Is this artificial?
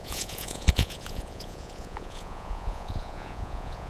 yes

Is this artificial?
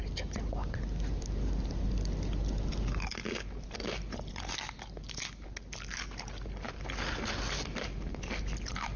no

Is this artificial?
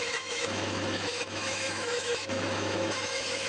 yes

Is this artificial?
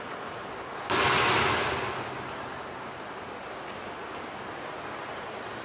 no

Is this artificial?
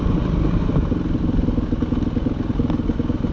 no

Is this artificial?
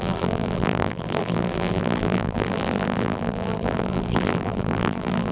yes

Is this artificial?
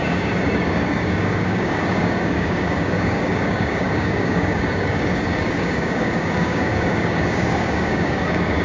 yes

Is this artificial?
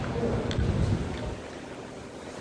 no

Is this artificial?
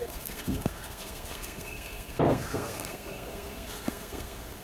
yes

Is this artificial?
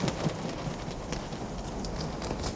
no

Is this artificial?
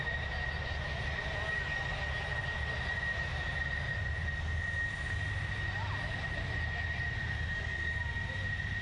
no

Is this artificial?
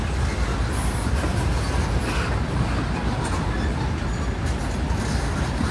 no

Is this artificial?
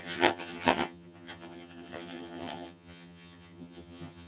yes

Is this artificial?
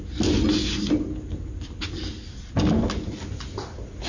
no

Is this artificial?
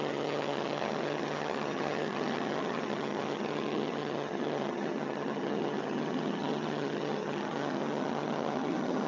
yes